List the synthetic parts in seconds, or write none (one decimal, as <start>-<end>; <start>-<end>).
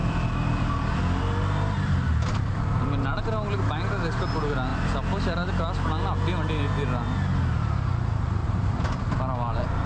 0.0-3.2; 4.7-6.6; 8.4-9.0